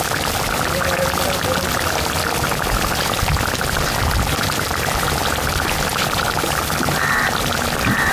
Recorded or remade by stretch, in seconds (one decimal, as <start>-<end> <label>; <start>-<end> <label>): 0.0-8.1 recorded